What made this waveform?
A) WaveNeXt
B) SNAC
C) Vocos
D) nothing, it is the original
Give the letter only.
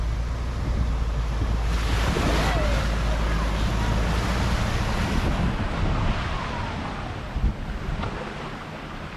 D